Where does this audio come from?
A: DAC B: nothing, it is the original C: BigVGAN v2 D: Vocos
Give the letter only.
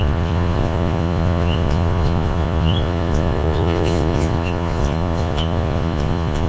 D